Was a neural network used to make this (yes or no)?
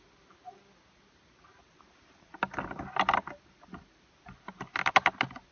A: no